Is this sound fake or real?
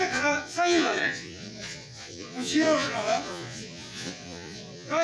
fake